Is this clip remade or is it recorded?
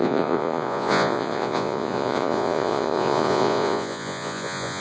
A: remade